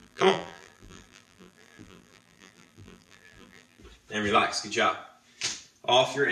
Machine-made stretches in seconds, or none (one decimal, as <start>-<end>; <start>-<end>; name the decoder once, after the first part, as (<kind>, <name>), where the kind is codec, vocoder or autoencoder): 0.0-3.8 (vocoder, BigVGAN v2)